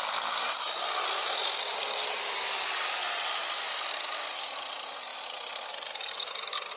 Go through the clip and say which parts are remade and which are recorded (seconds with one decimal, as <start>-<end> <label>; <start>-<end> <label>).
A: 0.0-1.7 remade; 1.7-3.4 recorded; 3.4-6.8 remade